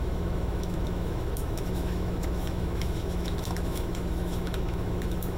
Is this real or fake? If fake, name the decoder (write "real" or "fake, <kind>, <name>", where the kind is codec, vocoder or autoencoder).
fake, autoencoder, DAC-VAE